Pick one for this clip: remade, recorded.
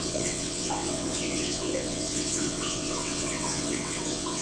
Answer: remade